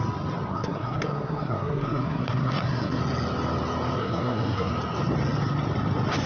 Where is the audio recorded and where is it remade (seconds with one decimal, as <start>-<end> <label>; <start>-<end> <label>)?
0.0-0.5 recorded; 0.5-3.0 remade; 3.0-4.0 recorded; 4.0-4.7 remade; 4.7-6.3 recorded